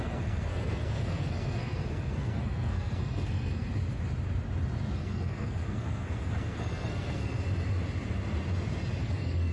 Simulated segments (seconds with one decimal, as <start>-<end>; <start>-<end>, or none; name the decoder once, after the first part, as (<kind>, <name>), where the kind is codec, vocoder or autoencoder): 0.0-3.7 (codec, SNAC); 5.0-7.4; 9.0-9.5